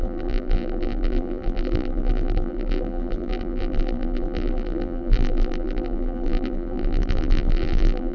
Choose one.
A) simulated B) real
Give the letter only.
A